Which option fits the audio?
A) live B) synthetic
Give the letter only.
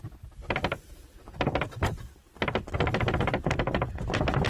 A